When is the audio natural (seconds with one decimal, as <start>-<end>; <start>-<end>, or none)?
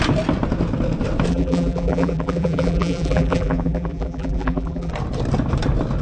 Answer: 0.0-1.3; 4.9-6.0